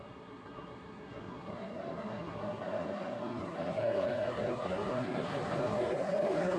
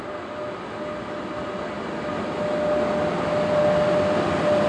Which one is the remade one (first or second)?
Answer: first